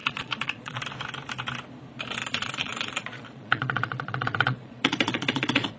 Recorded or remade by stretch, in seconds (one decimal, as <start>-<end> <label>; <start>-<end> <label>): 0.0-0.8 remade; 0.8-2.2 recorded; 2.2-5.8 remade